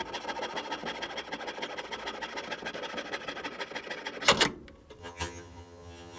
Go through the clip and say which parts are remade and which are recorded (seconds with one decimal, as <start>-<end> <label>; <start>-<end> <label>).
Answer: 0.0-5.0 recorded; 5.0-6.2 remade